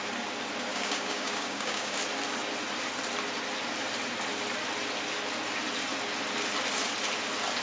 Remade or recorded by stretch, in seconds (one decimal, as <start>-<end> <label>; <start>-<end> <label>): 0.0-0.7 recorded; 0.7-2.0 remade; 2.0-7.6 recorded

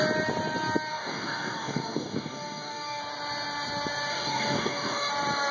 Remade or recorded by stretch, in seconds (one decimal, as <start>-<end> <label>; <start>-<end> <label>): 0.0-0.9 recorded; 0.9-3.0 remade; 3.0-4.1 recorded; 4.1-5.1 remade; 5.1-5.5 recorded